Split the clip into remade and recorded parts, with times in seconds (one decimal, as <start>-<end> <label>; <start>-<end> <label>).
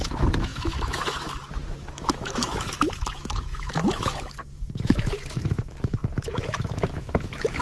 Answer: 0.0-7.6 remade